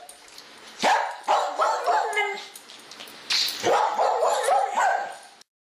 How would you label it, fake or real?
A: real